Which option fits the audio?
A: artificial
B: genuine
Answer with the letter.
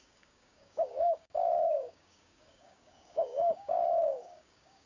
A